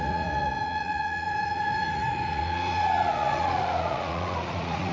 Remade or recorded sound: remade